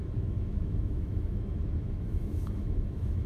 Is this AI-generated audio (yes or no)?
yes